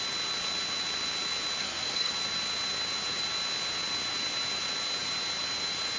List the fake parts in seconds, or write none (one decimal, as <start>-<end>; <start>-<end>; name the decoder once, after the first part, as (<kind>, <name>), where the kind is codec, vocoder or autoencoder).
1.6-2.1 (codec, SNAC)